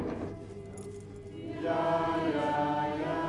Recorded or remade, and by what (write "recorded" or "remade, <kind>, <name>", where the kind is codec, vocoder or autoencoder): recorded